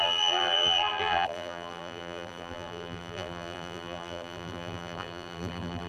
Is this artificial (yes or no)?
yes